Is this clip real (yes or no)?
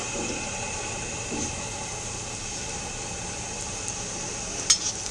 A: yes